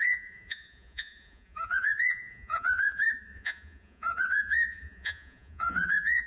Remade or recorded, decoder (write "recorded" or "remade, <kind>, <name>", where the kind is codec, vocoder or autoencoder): remade, vocoder, Vocos